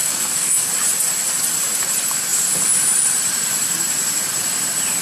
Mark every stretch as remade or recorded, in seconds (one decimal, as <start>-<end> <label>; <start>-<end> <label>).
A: 0.0-0.7 remade; 0.7-5.0 recorded